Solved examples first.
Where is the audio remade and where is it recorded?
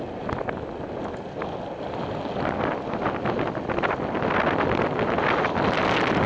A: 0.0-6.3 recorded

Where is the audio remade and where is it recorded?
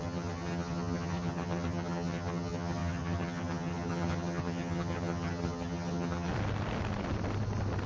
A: 0.0-6.3 remade; 6.3-7.9 recorded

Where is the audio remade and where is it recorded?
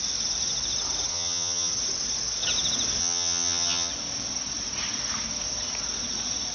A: 0.0-1.1 recorded; 1.1-1.7 remade; 1.7-3.0 recorded; 3.0-3.9 remade; 3.9-6.5 recorded